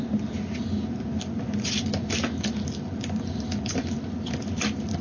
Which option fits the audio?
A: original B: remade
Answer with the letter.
A